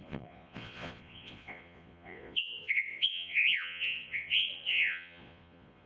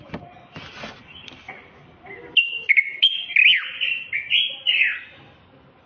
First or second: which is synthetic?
first